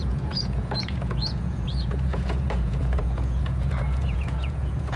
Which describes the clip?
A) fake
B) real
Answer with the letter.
A